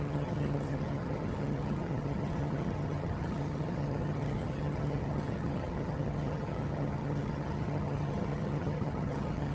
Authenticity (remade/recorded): remade